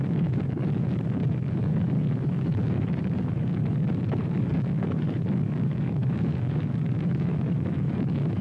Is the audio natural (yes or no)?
no